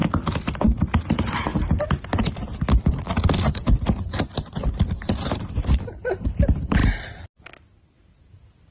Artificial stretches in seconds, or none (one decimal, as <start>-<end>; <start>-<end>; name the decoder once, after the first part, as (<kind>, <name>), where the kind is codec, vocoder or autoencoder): none